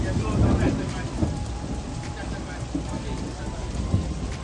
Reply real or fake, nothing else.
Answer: fake